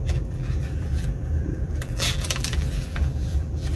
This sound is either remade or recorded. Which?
remade